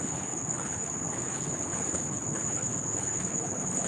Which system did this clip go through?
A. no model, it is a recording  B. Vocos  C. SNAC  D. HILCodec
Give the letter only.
D